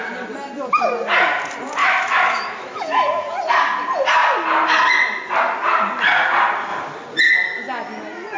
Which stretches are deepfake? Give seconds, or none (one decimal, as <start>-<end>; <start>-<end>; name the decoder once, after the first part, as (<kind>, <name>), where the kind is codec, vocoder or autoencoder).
1.8-3.3 (autoencoder, DAC-VAE)